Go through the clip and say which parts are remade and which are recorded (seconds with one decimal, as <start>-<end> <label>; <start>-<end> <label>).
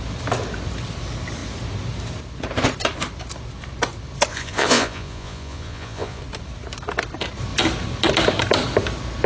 0.0-4.3 recorded; 4.3-6.2 remade; 6.2-9.3 recorded